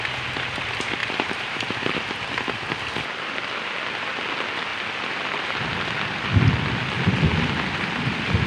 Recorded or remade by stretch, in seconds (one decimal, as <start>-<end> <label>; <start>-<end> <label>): 0.0-1.0 recorded; 1.0-1.9 remade; 1.9-8.5 recorded